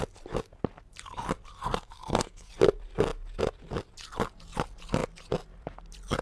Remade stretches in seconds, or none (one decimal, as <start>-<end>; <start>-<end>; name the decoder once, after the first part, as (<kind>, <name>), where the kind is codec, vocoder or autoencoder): 1.6-2.5 (codec, SNAC)